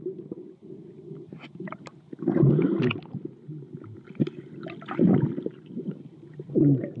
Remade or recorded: recorded